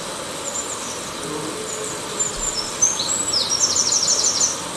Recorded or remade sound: recorded